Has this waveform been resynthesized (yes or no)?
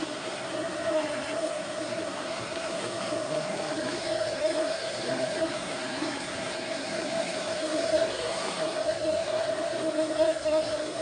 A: yes